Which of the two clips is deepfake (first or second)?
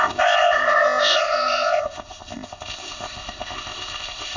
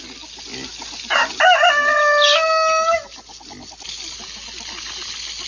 first